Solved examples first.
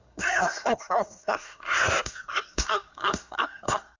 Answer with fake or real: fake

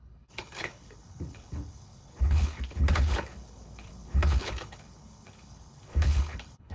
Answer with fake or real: fake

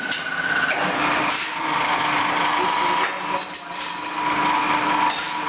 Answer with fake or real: real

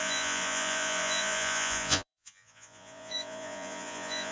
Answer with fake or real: fake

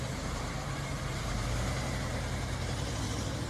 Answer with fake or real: fake